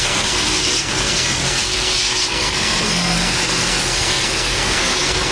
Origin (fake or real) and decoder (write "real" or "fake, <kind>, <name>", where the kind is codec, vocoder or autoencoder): fake, codec, SNAC